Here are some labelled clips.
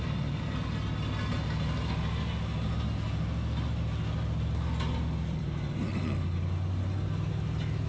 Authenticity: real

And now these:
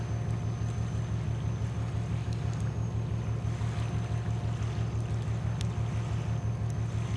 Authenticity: real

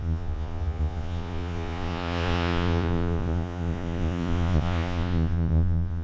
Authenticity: fake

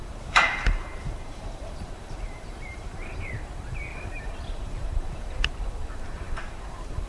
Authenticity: fake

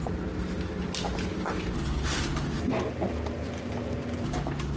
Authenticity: real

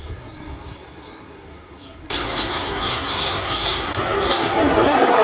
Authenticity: fake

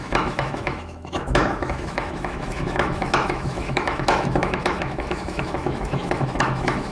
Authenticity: fake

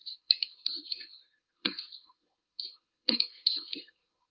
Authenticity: fake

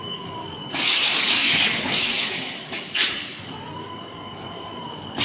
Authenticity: fake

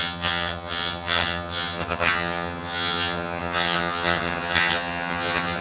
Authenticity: fake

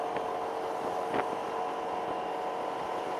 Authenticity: real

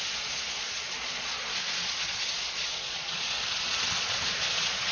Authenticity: fake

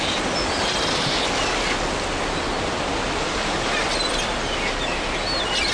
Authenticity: real